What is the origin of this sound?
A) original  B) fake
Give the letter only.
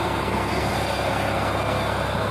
B